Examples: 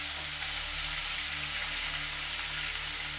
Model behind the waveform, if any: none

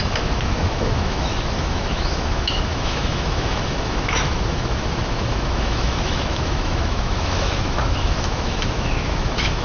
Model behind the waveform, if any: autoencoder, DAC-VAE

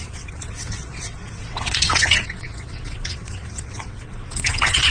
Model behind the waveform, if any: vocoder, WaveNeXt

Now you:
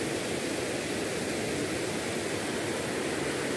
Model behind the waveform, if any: none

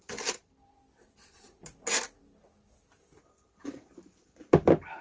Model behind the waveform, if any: none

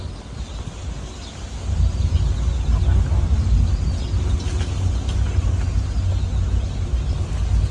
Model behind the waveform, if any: none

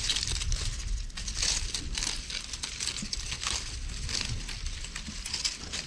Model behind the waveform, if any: none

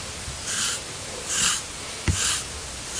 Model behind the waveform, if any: none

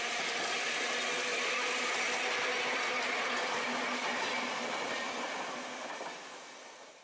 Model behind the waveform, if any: none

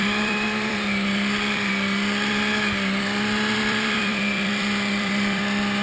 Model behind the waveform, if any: vocoder, BigVGAN v2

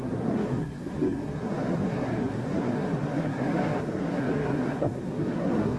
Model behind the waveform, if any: codec, SNAC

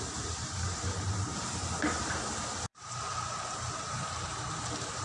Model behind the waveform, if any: vocoder, BigVGAN v2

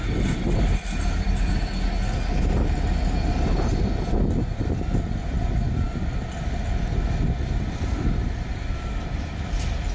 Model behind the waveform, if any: none